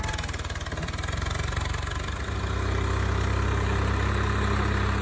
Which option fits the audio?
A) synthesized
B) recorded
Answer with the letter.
B